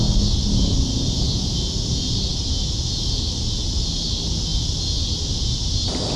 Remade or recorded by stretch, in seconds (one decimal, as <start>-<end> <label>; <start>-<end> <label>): 0.0-6.2 recorded